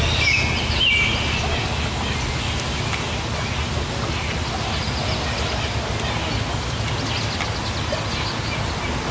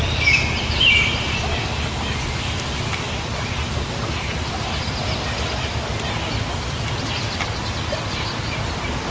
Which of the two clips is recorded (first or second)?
first